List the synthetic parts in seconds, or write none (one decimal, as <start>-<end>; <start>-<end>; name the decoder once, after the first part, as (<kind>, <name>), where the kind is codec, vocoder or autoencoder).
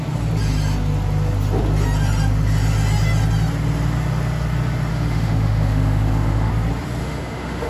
4.9-6.5 (autoencoder, DAC-VAE); 7.0-7.7